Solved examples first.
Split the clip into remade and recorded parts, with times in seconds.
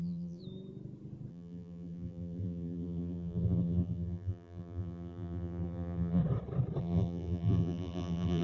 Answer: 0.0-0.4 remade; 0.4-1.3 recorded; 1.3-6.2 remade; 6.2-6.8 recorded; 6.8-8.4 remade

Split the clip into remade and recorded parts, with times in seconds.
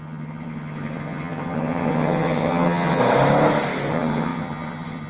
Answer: 0.0-3.0 remade; 3.0-3.9 recorded; 3.9-5.1 remade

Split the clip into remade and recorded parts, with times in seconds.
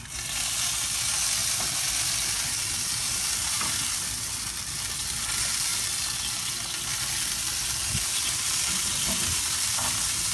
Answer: 0.0-1.4 recorded; 1.4-4.3 remade; 4.3-10.3 recorded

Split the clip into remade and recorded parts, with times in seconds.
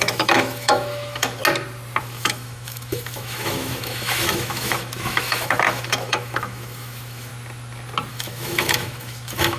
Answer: 0.0-1.4 remade; 1.4-2.0 recorded; 2.0-7.3 remade; 7.3-8.1 recorded; 8.1-9.6 remade